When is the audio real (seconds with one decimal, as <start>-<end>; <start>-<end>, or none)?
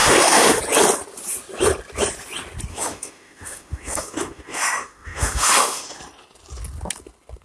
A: 0.6-2.7; 6.0-7.4